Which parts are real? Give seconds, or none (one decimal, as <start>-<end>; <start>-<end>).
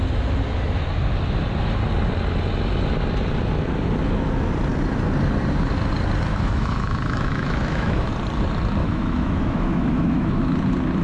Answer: 0.0-6.3; 8.1-8.8; 10.4-11.0